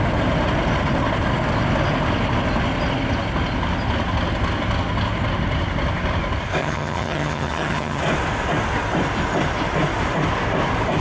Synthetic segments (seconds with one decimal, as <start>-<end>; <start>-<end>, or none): 6.6-8.0